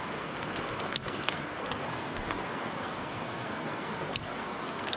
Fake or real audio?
fake